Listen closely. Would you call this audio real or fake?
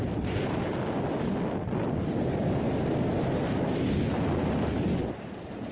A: real